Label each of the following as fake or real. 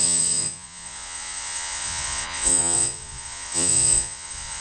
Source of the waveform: fake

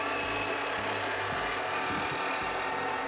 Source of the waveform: real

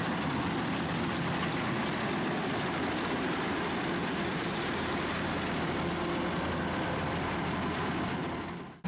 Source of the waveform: real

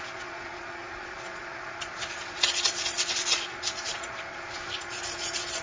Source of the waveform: fake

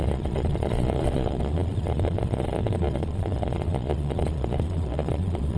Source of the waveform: fake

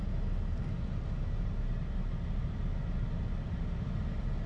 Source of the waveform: real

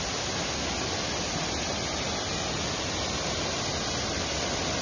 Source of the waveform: real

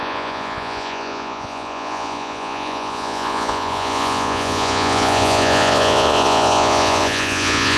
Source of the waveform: fake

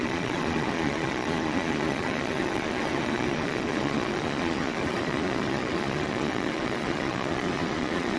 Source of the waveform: fake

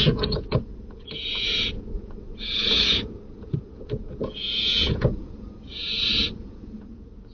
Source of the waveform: fake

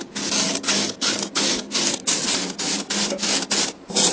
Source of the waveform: real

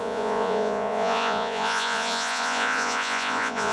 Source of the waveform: fake